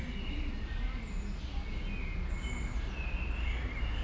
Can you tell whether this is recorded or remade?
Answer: recorded